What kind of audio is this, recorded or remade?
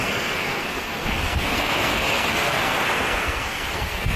remade